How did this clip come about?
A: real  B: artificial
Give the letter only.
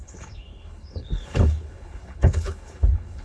B